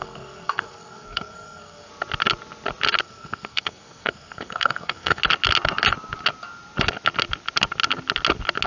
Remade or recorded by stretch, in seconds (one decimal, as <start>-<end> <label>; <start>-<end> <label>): 0.0-1.9 remade; 1.9-3.0 recorded; 3.0-5.2 remade; 5.2-8.7 recorded